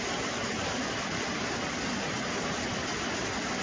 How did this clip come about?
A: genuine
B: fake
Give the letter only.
A